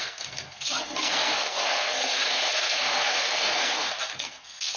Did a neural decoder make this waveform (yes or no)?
yes